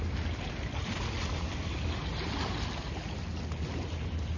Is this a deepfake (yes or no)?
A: no